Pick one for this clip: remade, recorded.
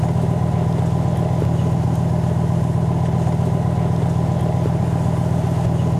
recorded